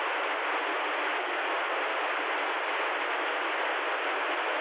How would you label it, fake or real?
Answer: real